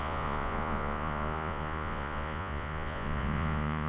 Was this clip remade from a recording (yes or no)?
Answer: yes